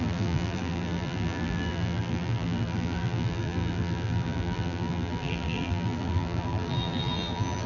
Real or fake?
fake